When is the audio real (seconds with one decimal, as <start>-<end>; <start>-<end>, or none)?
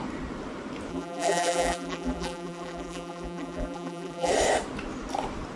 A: 0.0-0.9; 4.3-5.6